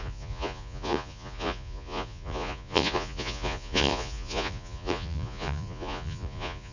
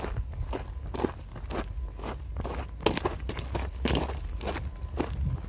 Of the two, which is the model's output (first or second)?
first